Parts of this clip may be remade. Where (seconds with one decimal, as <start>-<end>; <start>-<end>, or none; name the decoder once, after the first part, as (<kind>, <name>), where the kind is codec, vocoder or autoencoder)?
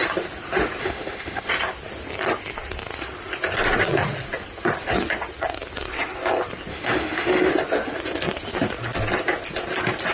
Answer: 0.8-1.5 (autoencoder, DAC-VAE); 6.7-7.5